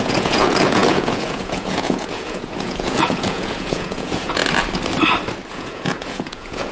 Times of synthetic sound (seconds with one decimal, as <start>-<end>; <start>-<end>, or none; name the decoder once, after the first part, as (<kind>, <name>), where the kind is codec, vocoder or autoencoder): 0.0-4.4 (vocoder, Vocos); 5.5-6.7